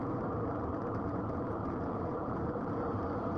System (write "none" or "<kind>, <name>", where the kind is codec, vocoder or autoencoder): vocoder, BigVGAN v2